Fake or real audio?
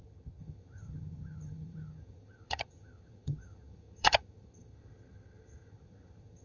fake